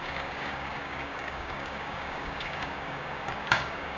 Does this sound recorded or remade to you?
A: remade